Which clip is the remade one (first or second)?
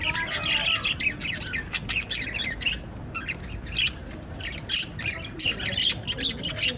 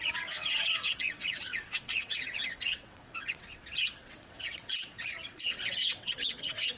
second